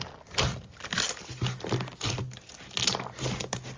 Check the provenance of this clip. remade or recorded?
recorded